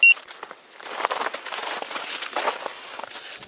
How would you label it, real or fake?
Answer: real